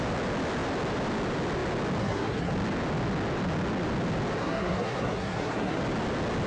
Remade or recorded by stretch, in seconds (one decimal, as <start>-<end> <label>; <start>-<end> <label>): 0.0-2.0 recorded; 2.0-2.5 remade; 2.5-4.4 recorded; 4.4-5.8 remade; 5.8-6.5 recorded

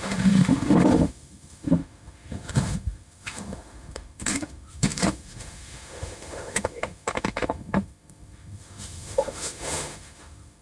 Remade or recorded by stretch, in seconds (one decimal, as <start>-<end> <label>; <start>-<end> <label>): 0.0-10.6 remade

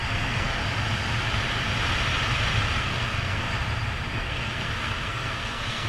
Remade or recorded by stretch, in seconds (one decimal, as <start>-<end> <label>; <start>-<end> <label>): 0.0-0.6 remade; 0.6-2.8 recorded; 2.8-3.5 remade; 3.5-4.1 recorded; 4.1-5.9 remade

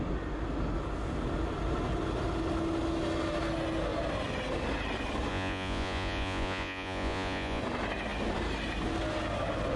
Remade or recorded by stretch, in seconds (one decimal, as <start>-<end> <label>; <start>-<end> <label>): 0.0-5.3 recorded; 5.3-7.6 remade; 7.6-9.8 recorded

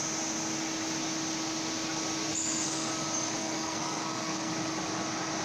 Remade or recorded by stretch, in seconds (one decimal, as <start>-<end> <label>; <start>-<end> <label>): 0.0-2.3 recorded; 2.3-2.9 remade; 2.9-3.4 recorded; 3.4-4.5 remade; 4.5-5.4 recorded

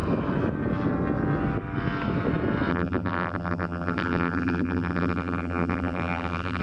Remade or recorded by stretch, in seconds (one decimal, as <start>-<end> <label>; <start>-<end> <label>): 0.0-2.7 recorded; 2.7-6.6 remade